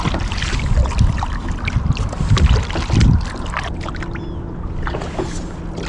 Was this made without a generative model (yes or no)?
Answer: yes